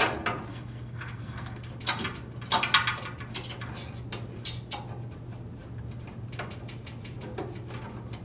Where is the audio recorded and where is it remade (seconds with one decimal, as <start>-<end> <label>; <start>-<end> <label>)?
0.0-0.5 recorded; 0.5-1.7 remade; 1.7-8.2 recorded